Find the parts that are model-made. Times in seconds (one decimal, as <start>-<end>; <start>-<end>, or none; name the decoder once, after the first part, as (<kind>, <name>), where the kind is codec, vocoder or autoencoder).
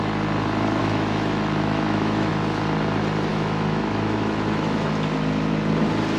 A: 0.8-2.3 (autoencoder, DAC-VAE); 3.3-4.9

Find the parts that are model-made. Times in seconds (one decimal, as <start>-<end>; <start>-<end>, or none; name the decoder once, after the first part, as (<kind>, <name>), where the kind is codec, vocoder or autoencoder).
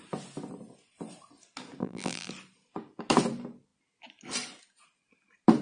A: 1.8-2.3 (vocoder, BigVGAN v2)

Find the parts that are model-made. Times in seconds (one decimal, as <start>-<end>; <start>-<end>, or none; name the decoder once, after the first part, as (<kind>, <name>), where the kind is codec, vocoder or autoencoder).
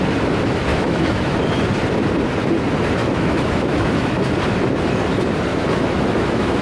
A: 0.7-1.3 (autoencoder, DAC-VAE); 3.0-4.2; 5.5-6.6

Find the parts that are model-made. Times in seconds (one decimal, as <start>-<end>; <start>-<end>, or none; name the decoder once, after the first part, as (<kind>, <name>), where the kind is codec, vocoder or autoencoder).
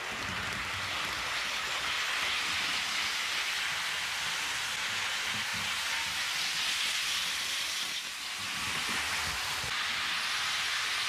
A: none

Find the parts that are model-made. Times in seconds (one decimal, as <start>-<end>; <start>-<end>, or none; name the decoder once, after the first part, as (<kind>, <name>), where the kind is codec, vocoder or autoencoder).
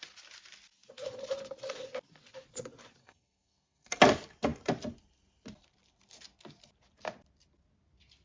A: 3.0-4.0 (codec, SNAC)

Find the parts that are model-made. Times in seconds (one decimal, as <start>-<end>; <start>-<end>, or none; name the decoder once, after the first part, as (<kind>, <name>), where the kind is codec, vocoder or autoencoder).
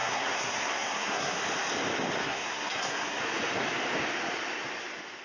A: 0.0-1.4 (codec, SNAC); 2.2-3.2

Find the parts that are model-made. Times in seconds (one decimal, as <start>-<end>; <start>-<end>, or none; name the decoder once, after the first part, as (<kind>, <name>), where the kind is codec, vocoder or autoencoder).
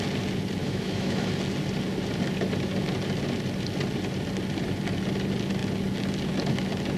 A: 0.6-1.3 (autoencoder, DAC-VAE)